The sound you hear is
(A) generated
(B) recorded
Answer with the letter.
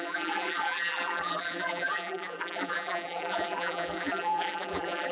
A